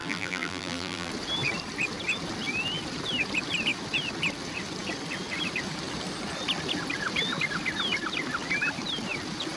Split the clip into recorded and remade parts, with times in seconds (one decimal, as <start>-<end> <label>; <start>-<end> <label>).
0.0-1.1 remade; 1.1-9.6 recorded